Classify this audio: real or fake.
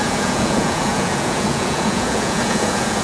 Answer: fake